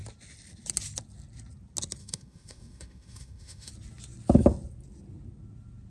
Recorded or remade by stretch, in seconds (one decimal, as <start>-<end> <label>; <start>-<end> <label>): 0.0-2.0 recorded; 2.0-3.7 remade; 3.7-5.9 recorded